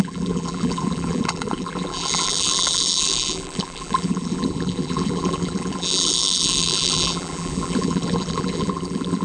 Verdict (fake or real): fake